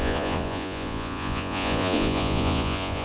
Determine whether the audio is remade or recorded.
remade